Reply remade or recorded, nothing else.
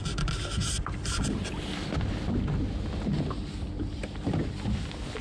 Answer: recorded